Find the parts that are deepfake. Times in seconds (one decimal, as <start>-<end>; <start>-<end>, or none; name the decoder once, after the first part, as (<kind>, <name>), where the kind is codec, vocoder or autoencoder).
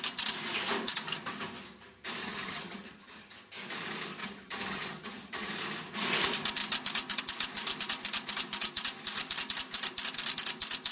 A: 2.2-3.3 (vocoder, HiFi-GAN); 4.2-5.5